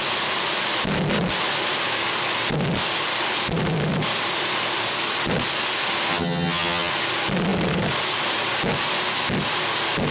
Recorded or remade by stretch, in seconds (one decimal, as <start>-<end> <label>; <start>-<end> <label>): 0.0-6.1 recorded; 6.1-6.9 remade; 6.9-10.1 recorded